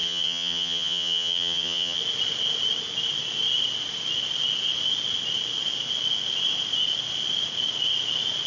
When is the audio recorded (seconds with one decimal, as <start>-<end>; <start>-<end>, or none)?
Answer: 2.0-8.5